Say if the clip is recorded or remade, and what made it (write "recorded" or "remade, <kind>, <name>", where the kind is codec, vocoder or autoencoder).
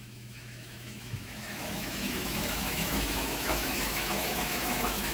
remade, autoencoder, DAC-VAE